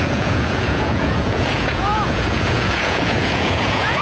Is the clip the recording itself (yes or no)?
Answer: no